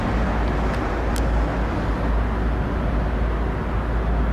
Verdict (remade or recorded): recorded